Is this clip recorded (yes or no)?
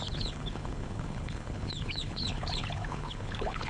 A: no